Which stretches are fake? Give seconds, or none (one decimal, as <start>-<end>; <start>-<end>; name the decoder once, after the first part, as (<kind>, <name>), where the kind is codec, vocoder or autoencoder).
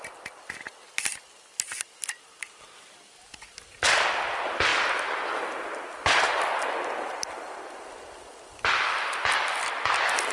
none